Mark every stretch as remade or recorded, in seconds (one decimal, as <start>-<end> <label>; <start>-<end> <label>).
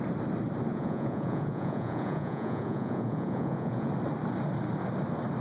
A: 0.0-0.7 recorded; 0.7-3.9 remade; 3.9-5.4 recorded